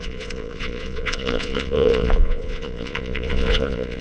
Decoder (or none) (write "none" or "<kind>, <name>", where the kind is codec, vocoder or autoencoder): vocoder, Vocos